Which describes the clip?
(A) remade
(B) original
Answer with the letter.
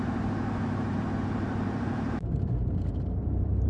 A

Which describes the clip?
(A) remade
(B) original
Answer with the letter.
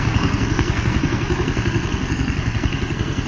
A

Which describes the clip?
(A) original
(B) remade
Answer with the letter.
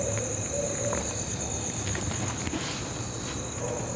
A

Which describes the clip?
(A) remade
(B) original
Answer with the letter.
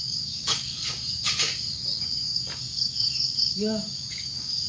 A